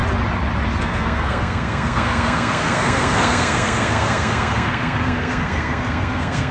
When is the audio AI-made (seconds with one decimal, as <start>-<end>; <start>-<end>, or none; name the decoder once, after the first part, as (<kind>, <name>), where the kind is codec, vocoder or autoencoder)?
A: 0.8-6.5 (codec, SNAC)